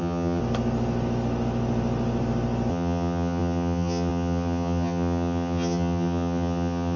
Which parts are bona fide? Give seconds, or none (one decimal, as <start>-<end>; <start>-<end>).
0.4-2.7